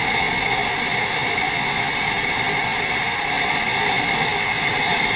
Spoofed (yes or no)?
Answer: no